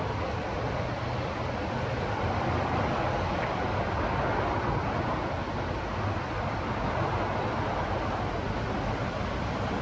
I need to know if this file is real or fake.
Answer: real